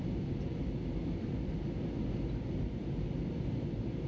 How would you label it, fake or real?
real